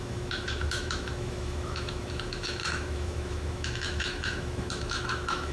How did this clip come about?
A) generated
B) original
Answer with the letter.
A